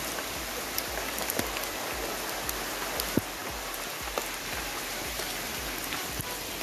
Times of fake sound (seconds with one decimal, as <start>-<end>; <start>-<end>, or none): none